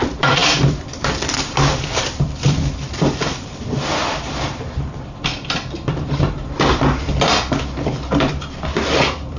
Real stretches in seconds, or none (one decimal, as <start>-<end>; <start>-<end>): none